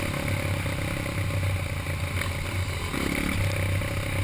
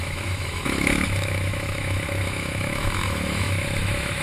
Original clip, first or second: first